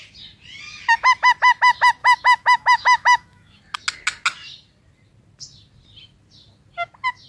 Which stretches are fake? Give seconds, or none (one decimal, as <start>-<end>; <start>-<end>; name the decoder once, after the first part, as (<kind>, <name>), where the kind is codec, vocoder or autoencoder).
2.0-3.6 (autoencoder, DAC-VAE)